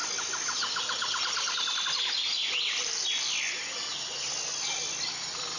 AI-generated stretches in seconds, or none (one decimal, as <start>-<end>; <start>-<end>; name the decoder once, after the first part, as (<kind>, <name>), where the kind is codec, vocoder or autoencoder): none